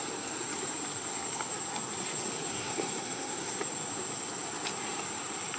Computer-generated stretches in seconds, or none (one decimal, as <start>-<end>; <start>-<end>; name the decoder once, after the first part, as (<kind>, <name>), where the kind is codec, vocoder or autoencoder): 2.5-3.5 (codec, SNAC)